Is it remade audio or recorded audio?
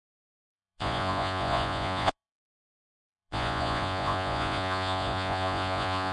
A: remade